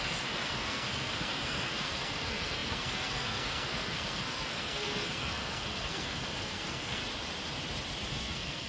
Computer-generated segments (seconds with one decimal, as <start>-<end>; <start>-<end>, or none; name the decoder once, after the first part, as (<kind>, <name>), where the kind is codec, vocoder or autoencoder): 0.0-7.0 (codec, SNAC); 8.1-8.7